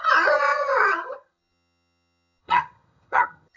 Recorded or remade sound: remade